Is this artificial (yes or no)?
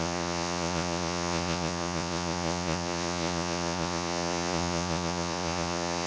yes